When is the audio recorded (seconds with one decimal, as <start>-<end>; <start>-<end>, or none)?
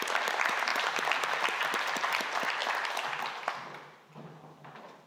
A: 0.0-5.1